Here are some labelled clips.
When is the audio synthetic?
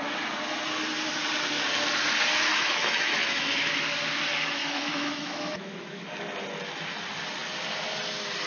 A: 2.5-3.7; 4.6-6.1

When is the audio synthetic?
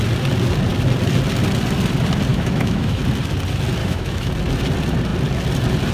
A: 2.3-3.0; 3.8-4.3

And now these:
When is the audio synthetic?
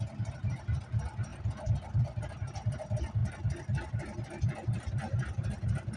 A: none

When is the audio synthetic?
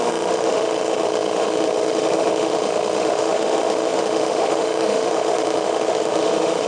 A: 0.0-6.7